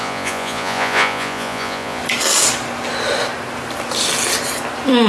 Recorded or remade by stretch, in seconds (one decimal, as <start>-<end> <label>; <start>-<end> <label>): 0.0-2.0 remade; 2.0-5.1 recorded